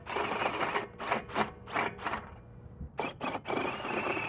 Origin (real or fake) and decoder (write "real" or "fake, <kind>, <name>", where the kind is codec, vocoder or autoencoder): real